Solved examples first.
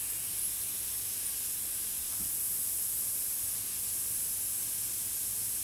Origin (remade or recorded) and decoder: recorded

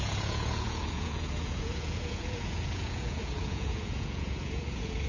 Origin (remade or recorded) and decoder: remade, vocoder, Vocos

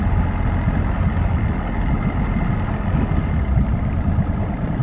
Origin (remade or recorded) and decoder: recorded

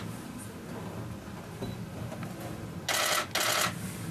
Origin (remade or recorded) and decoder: recorded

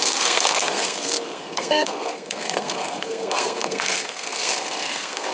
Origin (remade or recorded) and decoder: remade, codec, SNAC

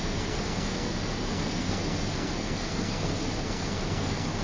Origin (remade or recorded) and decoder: remade, codec, SNAC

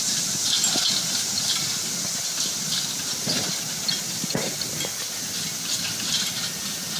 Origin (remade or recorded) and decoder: recorded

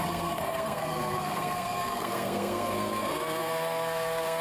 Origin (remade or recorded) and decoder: remade, codec, SNAC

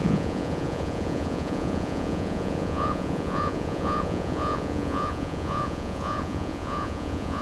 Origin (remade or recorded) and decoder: remade, vocoder, Vocos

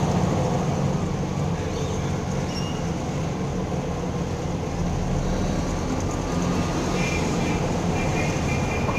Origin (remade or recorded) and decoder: recorded